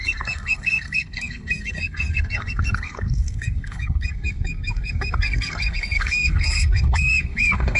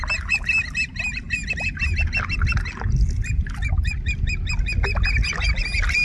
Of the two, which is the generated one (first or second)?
first